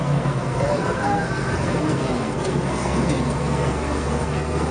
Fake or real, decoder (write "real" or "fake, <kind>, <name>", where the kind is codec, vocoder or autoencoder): fake, codec, SNAC